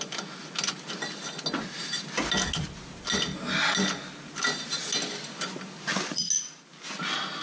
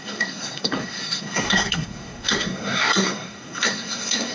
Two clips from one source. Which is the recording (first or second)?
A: first